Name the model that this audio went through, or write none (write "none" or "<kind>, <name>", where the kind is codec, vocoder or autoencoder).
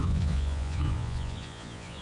vocoder, Vocos